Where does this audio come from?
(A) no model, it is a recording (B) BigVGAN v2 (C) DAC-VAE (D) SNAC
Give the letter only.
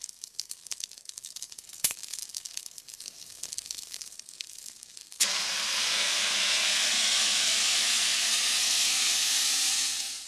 D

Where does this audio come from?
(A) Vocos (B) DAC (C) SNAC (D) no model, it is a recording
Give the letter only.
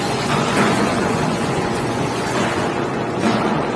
A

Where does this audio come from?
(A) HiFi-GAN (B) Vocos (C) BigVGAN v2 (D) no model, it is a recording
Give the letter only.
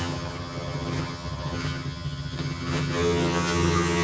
A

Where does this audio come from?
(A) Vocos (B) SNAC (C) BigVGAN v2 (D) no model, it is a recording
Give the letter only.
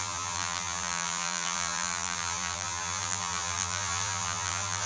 C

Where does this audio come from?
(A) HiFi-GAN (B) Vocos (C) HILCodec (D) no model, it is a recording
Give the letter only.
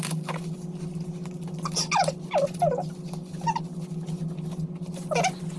D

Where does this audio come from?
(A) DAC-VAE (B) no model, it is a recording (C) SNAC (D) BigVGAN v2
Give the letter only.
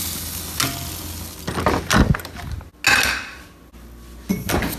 B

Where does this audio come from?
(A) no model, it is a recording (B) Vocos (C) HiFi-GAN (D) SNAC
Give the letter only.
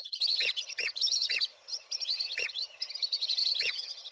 C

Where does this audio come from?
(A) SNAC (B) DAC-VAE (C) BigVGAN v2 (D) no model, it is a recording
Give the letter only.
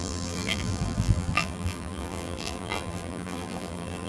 C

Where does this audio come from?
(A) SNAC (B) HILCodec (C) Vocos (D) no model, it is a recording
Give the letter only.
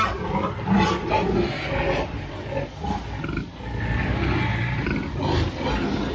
D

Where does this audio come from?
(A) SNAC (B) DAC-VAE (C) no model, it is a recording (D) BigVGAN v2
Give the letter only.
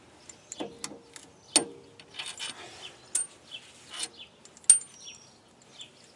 C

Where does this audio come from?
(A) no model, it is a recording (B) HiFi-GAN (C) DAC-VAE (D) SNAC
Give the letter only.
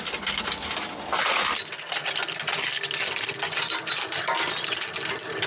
A